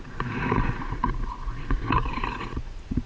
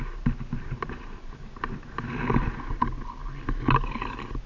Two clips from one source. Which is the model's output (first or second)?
first